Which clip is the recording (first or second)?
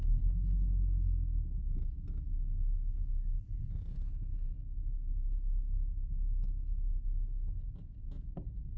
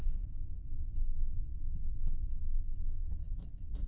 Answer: first